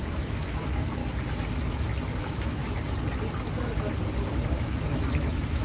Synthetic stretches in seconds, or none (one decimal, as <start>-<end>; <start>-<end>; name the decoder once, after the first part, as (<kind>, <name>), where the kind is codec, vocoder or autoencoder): 0.0-1.0 (autoencoder, DAC-VAE); 2.2-2.6; 4.6-5.6